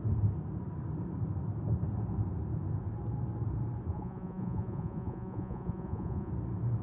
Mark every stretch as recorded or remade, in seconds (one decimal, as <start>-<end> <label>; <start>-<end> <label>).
0.0-3.9 recorded; 3.9-6.3 remade; 6.3-6.8 recorded